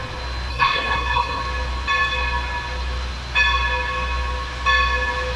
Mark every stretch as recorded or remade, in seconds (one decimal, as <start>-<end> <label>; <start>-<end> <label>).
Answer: 0.0-0.5 recorded; 0.5-1.4 remade; 1.4-5.4 recorded